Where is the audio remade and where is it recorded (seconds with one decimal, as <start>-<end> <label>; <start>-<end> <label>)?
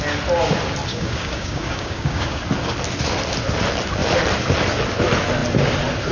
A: 0.0-0.9 recorded; 0.9-2.4 remade; 2.4-6.1 recorded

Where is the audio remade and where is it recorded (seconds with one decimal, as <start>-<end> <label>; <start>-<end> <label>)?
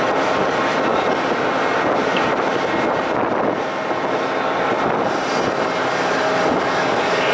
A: 0.0-7.3 recorded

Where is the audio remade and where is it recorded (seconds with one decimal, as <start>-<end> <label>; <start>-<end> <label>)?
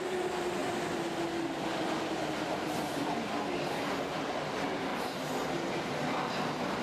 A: 0.0-6.8 recorded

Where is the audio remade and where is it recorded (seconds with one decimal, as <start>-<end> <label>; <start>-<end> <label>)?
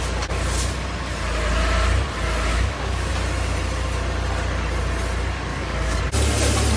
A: 0.0-2.5 recorded; 2.5-3.1 remade; 3.1-5.5 recorded; 5.5-6.0 remade; 6.0-6.8 recorded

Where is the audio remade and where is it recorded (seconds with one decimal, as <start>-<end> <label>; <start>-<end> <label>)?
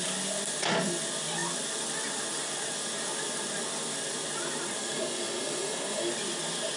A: 0.0-4.8 recorded; 4.8-6.1 remade; 6.1-6.8 recorded